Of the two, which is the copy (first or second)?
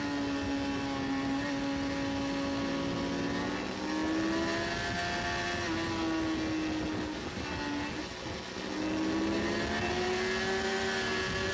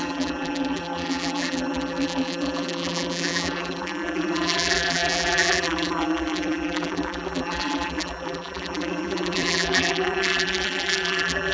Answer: second